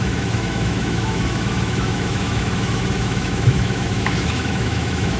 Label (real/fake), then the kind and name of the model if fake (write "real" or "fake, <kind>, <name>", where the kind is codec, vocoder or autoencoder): fake, autoencoder, DAC-VAE